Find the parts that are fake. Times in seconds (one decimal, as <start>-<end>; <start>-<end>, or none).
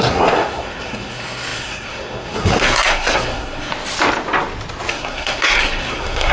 0.0-3.7; 4.9-6.3